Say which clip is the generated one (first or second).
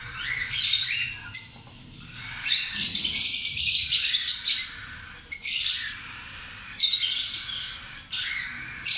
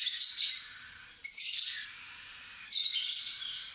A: second